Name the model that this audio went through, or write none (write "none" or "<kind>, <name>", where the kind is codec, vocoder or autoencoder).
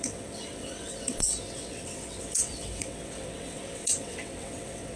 vocoder, WaveNeXt